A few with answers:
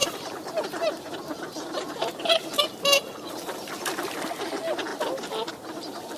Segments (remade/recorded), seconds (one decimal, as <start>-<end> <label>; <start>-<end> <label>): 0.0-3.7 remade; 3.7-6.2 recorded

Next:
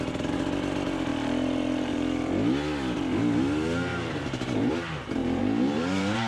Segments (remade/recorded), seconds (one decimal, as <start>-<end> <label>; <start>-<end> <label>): 0.0-1.1 recorded; 1.1-2.3 remade; 2.3-3.9 recorded; 3.9-4.7 remade; 4.7-5.2 recorded; 5.2-6.3 remade

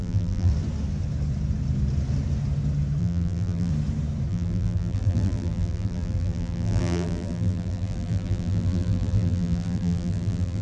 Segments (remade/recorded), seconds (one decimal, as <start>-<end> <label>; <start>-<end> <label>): 0.0-0.5 remade; 0.5-3.0 recorded; 3.0-3.7 remade; 3.7-4.3 recorded; 4.3-10.6 remade

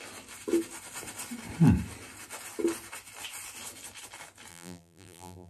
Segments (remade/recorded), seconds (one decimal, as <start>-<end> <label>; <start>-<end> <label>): 0.0-4.5 recorded; 4.5-5.5 remade